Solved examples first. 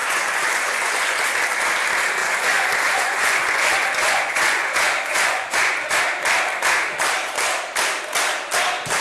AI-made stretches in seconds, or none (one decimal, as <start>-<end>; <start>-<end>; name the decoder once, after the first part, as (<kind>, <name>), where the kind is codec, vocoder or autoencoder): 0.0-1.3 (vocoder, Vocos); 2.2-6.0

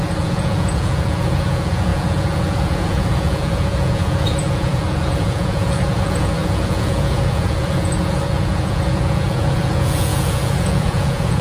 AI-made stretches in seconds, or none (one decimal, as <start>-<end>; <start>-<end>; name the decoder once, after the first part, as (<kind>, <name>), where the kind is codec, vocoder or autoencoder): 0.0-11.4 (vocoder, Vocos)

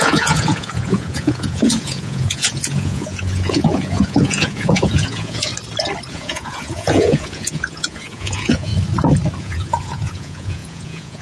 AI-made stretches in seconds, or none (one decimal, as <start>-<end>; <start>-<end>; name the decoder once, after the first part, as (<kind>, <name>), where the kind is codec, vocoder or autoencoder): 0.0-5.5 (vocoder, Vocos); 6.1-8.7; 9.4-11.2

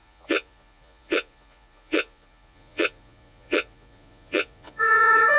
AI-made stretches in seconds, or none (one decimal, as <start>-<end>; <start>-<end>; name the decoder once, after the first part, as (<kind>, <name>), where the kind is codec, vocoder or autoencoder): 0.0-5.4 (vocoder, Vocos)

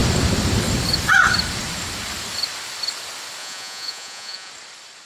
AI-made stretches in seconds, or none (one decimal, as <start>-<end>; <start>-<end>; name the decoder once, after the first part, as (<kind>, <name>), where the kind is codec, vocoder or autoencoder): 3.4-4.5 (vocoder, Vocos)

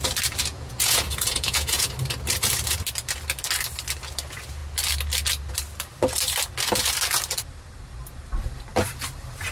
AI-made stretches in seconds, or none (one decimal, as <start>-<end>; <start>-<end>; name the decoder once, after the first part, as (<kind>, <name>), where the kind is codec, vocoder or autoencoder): 0.5-1.9 (vocoder, Vocos)